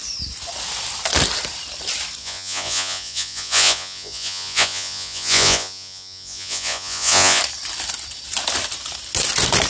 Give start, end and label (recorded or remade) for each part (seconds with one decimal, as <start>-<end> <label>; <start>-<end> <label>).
0.0-2.2 recorded; 2.2-7.4 remade; 7.4-9.7 recorded